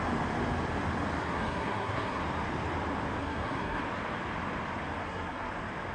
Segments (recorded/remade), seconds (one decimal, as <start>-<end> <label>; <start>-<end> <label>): 0.0-1.2 recorded; 1.2-2.2 remade; 2.2-3.2 recorded; 3.2-3.8 remade; 3.8-5.0 recorded; 5.0-5.5 remade; 5.5-5.9 recorded